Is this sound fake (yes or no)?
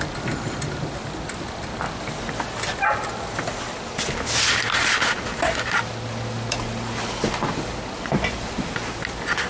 no